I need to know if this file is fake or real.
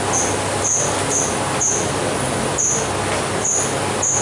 real